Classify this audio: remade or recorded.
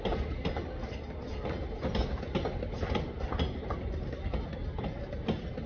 recorded